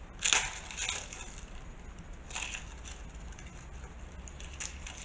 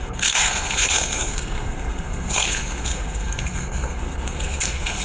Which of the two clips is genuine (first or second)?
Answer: first